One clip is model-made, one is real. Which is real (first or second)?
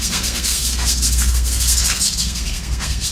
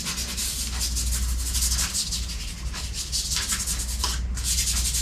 second